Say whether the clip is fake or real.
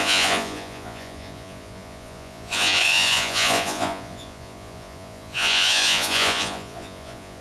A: fake